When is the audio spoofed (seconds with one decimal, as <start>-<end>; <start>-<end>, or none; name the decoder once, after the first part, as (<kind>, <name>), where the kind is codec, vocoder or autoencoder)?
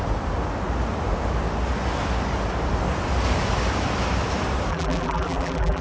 4.7-5.8 (vocoder, BigVGAN v2)